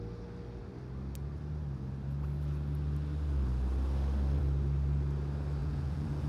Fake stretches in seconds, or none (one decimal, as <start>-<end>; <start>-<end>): 5.6-6.3

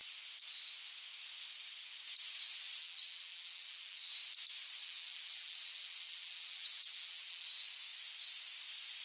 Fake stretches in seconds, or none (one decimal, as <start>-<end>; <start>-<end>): 2.8-4.1; 4.8-7.5

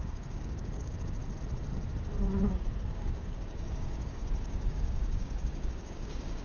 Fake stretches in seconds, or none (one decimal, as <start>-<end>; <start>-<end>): 0.0-1.2; 2.4-6.4

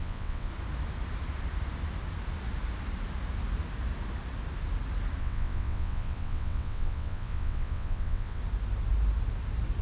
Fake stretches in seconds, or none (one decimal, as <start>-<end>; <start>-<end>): 0.0-0.5; 5.2-8.4

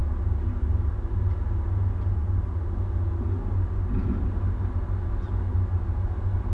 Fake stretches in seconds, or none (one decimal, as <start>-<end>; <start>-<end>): none